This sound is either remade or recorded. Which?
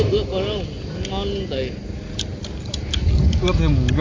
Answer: recorded